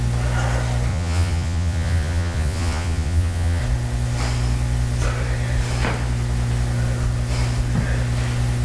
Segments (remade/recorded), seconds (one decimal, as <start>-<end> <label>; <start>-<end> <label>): 0.0-0.9 recorded; 0.9-3.6 remade; 3.6-8.6 recorded